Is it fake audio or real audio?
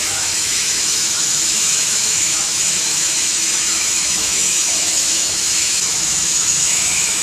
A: fake